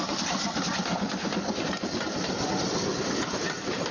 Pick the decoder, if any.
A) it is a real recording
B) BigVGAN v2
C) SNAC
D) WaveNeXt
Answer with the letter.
A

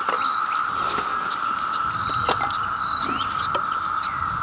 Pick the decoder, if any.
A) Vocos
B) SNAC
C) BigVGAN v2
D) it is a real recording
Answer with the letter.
D